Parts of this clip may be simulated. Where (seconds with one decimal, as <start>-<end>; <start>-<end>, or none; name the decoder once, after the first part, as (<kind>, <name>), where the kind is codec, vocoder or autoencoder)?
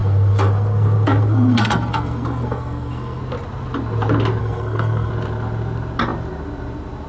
0.0-3.2 (codec, SNAC); 4.4-5.1